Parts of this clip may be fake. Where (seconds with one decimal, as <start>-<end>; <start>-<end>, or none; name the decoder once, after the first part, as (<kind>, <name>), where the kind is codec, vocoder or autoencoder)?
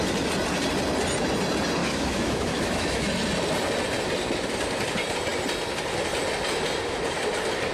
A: 1.8-3.1 (autoencoder, DAC-VAE)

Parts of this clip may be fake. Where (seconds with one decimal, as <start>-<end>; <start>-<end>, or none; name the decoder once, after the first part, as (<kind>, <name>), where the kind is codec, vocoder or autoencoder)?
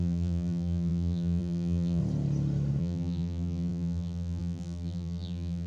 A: 0.0-2.0 (vocoder, BigVGAN v2); 2.8-5.7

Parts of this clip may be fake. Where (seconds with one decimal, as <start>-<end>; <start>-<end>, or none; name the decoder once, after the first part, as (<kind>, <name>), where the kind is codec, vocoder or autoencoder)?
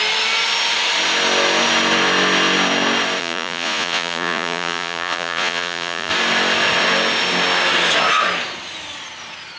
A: 3.2-6.1 (vocoder, Vocos)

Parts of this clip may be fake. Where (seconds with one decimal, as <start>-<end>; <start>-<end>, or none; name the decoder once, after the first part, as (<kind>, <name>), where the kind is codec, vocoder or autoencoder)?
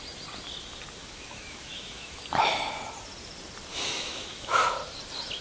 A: 1.0-2.2 (autoencoder, DAC-VAE); 3.7-4.6